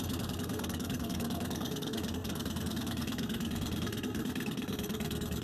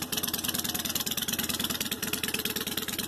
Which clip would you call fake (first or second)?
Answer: first